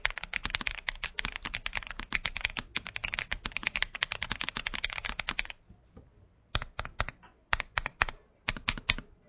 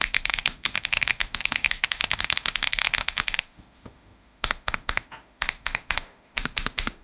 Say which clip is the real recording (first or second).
first